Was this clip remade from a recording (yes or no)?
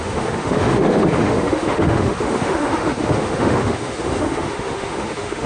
yes